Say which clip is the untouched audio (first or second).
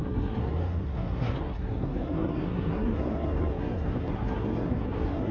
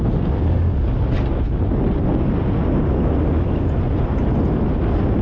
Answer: second